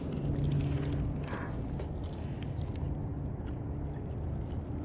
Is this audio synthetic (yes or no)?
no